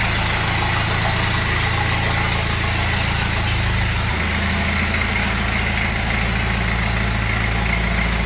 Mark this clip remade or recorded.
recorded